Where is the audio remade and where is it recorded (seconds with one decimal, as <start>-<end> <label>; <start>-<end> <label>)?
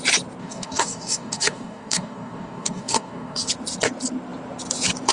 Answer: 0.0-0.4 recorded; 0.4-3.5 remade; 3.5-5.1 recorded